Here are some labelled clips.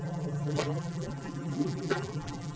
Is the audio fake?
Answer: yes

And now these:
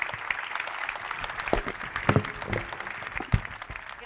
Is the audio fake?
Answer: no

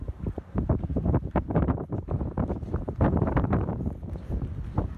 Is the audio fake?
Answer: yes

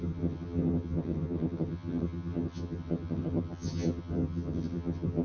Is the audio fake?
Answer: yes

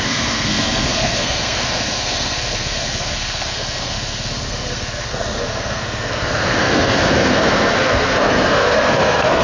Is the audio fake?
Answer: yes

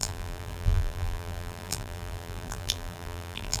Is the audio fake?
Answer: yes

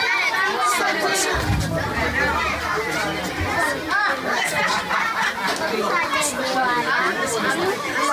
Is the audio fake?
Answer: no